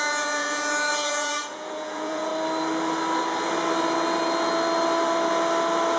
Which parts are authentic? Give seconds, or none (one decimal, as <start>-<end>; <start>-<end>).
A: 2.3-6.0